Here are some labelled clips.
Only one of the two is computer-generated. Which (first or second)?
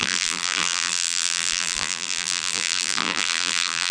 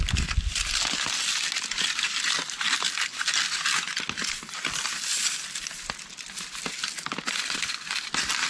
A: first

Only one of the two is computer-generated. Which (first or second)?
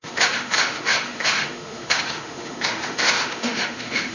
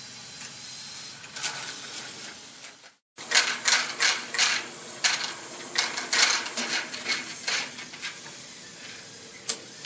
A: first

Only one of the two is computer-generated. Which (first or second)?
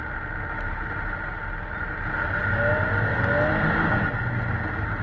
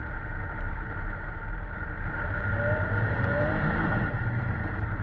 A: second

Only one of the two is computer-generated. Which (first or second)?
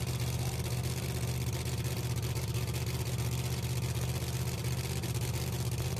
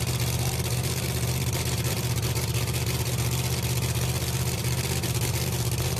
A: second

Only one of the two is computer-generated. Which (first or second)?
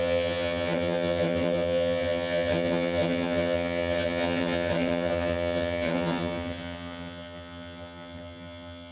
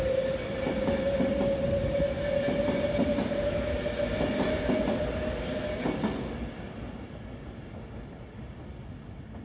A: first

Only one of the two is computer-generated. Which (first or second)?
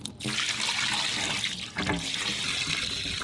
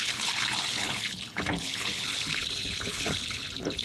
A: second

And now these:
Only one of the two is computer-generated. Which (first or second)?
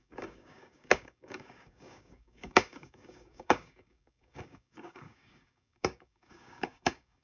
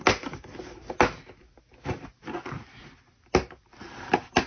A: first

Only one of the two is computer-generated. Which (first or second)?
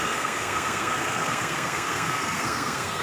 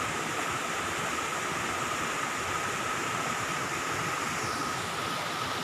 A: first